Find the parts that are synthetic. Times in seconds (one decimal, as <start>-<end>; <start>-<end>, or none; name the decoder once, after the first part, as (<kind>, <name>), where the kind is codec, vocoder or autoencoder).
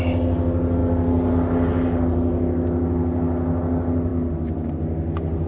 none